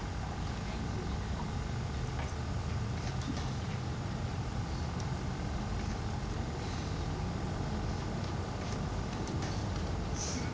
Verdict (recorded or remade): recorded